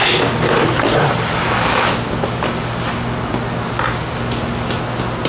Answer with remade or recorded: recorded